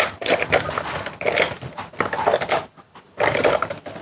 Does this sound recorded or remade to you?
recorded